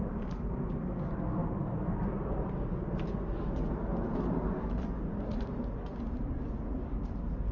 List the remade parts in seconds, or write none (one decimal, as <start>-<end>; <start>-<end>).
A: 1.4-2.4